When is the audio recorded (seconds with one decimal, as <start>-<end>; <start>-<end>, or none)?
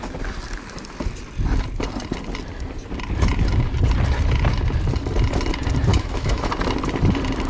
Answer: 0.0-5.9; 6.5-7.5